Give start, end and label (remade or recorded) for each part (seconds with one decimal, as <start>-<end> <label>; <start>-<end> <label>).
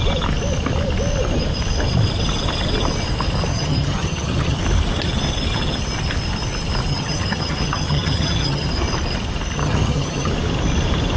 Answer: 0.0-3.5 recorded; 3.5-4.6 remade; 4.6-6.9 recorded; 6.9-8.7 remade; 8.7-9.6 recorded; 9.6-10.3 remade; 10.3-11.2 recorded